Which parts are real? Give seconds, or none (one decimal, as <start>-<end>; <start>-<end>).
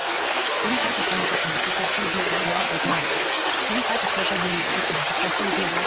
3.5-4.5; 5.1-5.9